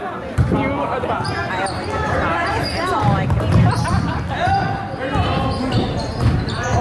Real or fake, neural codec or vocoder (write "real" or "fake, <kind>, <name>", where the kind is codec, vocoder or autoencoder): real